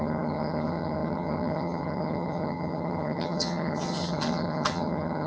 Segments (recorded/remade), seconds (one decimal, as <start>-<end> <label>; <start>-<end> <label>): 0.0-5.3 remade